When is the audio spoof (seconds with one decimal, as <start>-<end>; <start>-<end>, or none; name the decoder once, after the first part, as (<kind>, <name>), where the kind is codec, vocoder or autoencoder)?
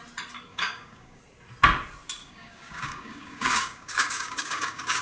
0.5-1.2 (codec, DAC); 2.2-5.0